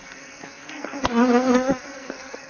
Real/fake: fake